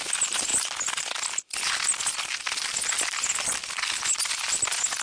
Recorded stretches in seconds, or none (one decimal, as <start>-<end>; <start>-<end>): 0.0-5.0